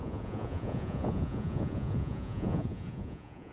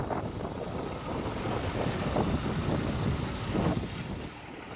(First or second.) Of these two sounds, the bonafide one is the second